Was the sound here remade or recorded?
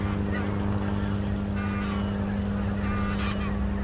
recorded